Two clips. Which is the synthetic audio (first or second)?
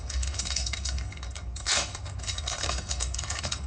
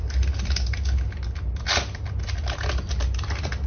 first